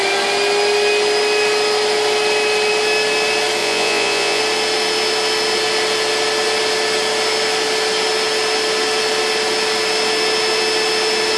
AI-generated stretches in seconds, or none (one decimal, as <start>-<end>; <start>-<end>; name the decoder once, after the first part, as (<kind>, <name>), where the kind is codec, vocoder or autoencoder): 3.6-4.4 (vocoder, Vocos)